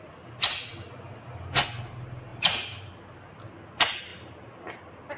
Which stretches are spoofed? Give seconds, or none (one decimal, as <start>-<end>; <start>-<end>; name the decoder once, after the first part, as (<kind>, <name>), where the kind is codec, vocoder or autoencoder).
2.3-2.9 (vocoder, BigVGAN v2)